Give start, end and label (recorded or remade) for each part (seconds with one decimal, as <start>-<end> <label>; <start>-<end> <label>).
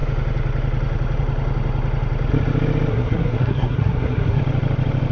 0.0-2.9 recorded; 2.9-4.4 remade; 4.4-5.1 recorded